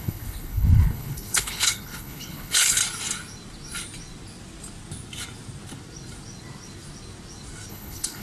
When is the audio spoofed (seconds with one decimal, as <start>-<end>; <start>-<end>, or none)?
0.0-2.8; 7.7-8.2